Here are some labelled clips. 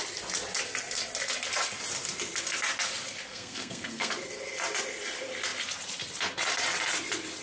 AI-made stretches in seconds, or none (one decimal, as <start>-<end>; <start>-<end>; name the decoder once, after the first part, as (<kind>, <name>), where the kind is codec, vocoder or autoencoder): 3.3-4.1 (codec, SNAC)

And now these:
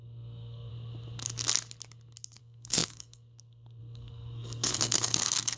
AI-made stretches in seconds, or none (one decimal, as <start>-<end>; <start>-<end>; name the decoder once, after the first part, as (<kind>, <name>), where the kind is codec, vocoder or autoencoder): 0.0-0.7 (codec, SNAC); 2.4-5.6

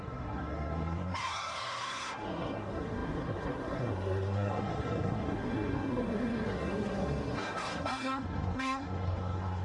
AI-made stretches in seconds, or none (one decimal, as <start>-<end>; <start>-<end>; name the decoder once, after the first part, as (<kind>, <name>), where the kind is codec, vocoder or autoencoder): 0.0-9.6 (codec, SNAC)

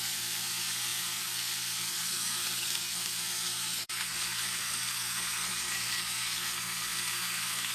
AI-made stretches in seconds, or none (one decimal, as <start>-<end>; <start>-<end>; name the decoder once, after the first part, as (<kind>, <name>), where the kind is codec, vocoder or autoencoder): 0.0-7.7 (codec, SNAC)

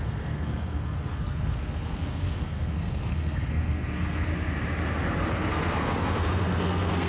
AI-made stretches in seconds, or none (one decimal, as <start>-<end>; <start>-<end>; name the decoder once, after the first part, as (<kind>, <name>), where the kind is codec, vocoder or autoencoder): 0.0-4.3 (codec, SNAC); 5.5-7.1